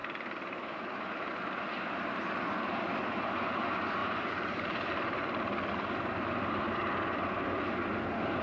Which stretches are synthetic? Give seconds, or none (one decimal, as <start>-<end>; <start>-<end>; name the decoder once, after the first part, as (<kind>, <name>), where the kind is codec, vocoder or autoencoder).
4.0-5.4 (vocoder, BigVGAN v2)